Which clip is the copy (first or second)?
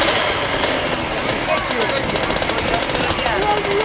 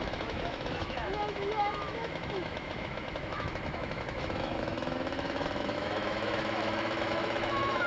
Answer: second